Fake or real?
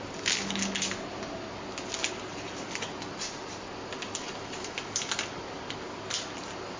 real